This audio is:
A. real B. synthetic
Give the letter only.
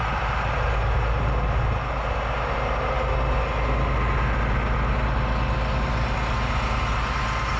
A